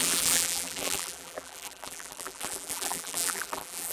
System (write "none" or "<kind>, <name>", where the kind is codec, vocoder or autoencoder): vocoder, BigVGAN v2